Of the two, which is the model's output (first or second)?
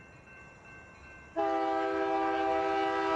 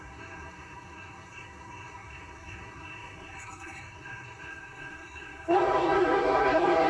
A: second